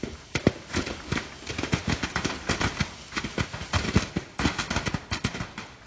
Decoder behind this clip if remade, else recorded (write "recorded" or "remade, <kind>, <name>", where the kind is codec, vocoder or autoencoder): recorded